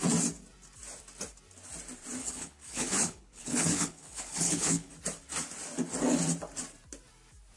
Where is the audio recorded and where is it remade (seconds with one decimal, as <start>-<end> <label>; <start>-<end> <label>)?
0.0-2.2 recorded; 2.2-4.9 remade; 4.9-7.6 recorded